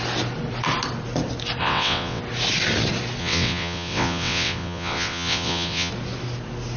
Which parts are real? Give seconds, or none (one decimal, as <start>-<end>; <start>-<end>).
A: 0.0-1.6; 2.2-3.2; 5.9-6.8